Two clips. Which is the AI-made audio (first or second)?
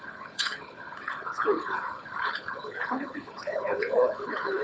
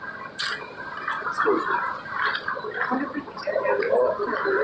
first